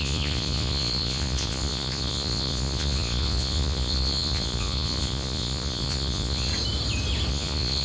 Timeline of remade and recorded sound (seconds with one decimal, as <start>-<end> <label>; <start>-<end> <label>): 0.0-6.5 remade; 6.5-7.3 recorded; 7.3-7.8 remade